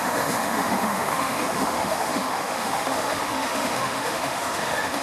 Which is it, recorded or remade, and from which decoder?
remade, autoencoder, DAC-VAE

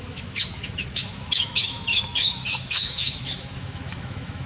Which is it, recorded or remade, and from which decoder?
remade, autoencoder, DAC-VAE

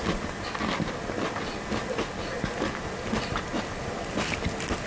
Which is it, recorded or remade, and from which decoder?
recorded